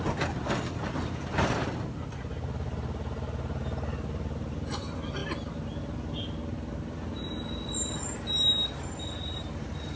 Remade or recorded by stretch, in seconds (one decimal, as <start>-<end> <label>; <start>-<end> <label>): 0.0-10.0 recorded